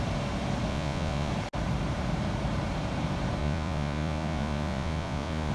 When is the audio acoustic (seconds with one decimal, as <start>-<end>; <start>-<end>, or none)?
0.0-0.7; 1.3-3.4